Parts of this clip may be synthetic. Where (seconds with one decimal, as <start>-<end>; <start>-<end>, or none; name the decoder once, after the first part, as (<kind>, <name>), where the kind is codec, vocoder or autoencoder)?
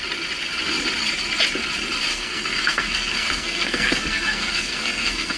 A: 2.1-5.4 (codec, SNAC)